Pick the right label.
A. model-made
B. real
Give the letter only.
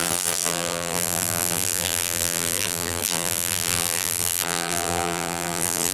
A